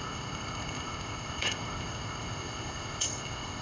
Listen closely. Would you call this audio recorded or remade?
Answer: remade